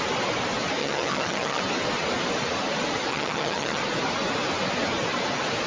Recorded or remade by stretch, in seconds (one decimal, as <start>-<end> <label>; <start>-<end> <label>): 0.0-0.8 recorded; 0.8-1.6 remade; 1.6-3.1 recorded; 3.1-3.8 remade; 3.8-5.7 recorded